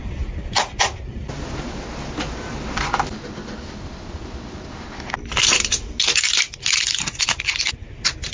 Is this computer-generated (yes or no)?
no